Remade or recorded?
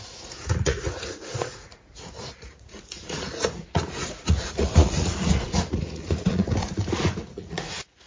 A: remade